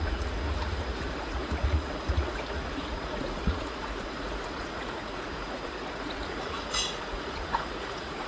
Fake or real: fake